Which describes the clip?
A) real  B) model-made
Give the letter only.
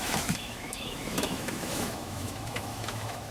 B